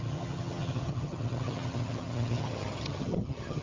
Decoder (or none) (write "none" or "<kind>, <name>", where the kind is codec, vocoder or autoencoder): vocoder, HiFi-GAN